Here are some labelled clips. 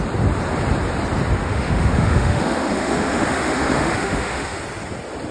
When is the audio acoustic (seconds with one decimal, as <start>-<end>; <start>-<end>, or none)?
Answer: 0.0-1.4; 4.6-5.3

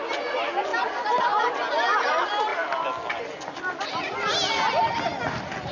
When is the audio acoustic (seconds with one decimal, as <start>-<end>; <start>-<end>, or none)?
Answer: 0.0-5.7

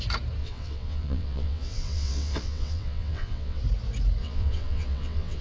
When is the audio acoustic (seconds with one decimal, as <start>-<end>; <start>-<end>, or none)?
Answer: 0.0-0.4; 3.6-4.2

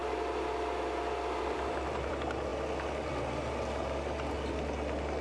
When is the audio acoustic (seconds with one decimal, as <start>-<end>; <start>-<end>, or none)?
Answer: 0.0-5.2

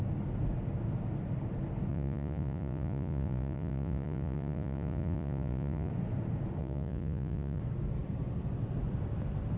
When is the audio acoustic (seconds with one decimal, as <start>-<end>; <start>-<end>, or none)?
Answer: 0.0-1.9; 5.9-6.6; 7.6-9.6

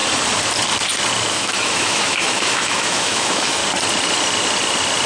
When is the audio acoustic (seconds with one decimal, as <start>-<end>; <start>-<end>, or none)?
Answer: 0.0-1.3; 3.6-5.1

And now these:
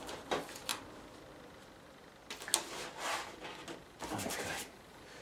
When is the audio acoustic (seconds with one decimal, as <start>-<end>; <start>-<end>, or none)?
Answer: 0.7-3.8